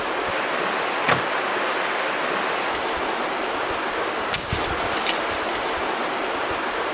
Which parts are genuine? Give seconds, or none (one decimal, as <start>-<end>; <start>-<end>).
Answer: 0.0-4.0; 4.5-6.9